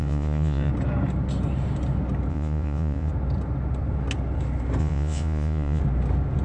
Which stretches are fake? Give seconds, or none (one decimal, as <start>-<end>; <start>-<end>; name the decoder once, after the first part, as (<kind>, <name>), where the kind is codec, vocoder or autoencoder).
0.0-0.7 (vocoder, Vocos); 2.3-3.1; 4.8-5.8